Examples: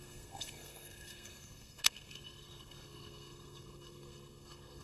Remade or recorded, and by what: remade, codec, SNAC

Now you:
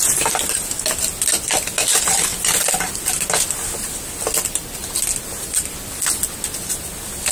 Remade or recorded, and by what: recorded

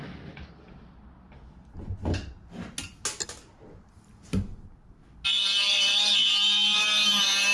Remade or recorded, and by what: recorded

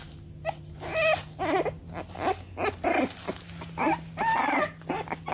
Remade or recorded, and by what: recorded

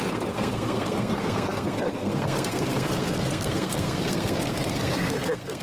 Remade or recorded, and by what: remade, codec, SNAC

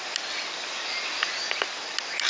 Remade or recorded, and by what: recorded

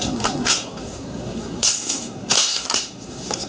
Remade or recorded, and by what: remade, codec, SNAC